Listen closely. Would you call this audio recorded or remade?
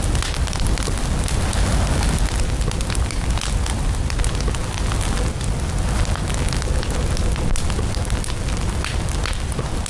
recorded